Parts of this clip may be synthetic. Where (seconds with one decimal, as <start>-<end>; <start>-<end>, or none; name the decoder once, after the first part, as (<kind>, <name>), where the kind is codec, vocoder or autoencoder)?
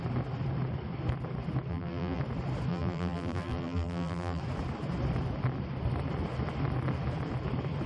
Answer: 1.7-2.2 (vocoder, BigVGAN v2); 2.7-4.4